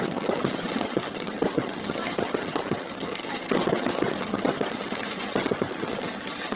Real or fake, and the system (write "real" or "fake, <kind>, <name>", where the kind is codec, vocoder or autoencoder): fake, vocoder, HiFi-GAN